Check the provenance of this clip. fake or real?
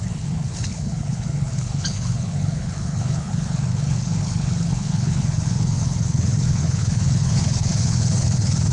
fake